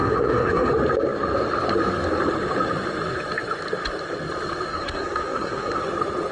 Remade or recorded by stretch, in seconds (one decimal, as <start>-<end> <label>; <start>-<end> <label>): 0.0-0.7 remade; 0.7-4.7 recorded; 4.7-5.8 remade; 5.8-6.3 recorded